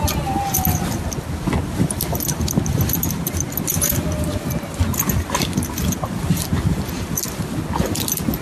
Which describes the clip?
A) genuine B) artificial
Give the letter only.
A